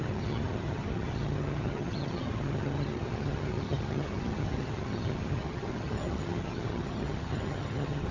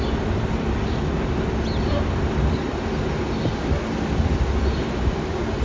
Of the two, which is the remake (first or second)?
first